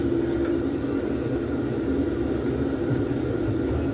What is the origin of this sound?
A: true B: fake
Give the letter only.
A